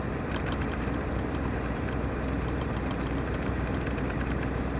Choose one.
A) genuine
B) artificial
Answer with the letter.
B